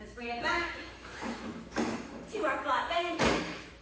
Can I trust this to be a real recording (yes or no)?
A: no